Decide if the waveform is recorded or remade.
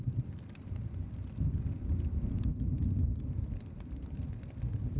recorded